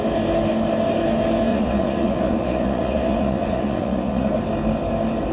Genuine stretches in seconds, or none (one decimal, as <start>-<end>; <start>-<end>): 0.0-1.5; 4.3-5.3